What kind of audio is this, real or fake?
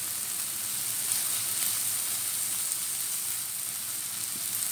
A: real